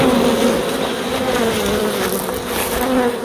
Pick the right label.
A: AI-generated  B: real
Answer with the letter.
B